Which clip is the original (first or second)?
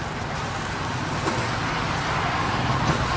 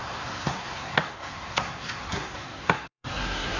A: first